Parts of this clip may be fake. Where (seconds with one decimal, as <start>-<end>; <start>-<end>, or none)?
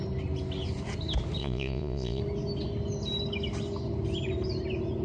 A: 1.4-2.2